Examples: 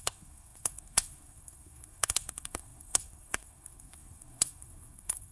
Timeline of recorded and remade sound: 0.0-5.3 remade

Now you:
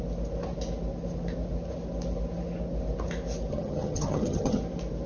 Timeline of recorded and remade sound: 0.0-3.5 recorded; 3.5-4.6 remade; 4.6-5.1 recorded

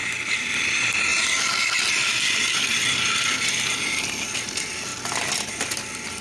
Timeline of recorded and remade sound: 0.0-6.2 recorded